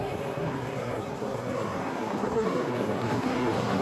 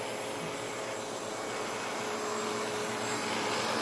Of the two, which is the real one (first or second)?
second